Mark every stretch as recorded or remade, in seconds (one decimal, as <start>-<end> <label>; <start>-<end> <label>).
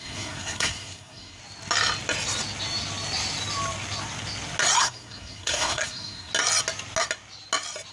0.0-1.4 remade; 1.4-4.8 recorded; 4.8-6.3 remade; 6.3-7.9 recorded